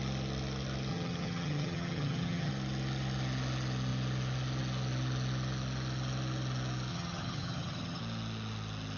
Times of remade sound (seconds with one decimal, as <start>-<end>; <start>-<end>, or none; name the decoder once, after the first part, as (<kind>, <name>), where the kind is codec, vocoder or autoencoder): 0.9-2.5 (vocoder, HiFi-GAN); 6.9-8.0